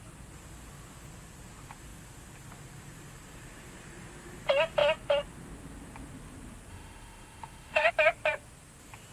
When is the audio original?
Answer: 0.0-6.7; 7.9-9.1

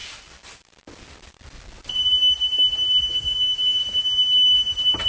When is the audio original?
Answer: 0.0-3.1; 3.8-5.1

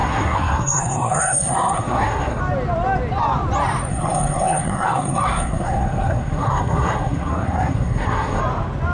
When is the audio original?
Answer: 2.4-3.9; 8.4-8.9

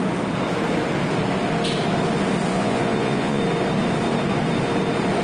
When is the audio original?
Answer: 0.0-2.5; 3.4-5.2